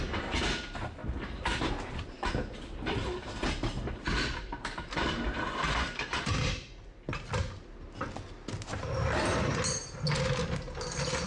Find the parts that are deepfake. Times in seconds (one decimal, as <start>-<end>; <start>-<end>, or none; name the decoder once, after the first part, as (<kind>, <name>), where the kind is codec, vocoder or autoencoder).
1.0-1.7 (vocoder, BigVGAN v2); 3.0-6.4